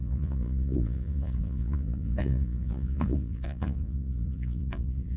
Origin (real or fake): fake